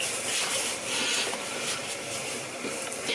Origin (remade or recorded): recorded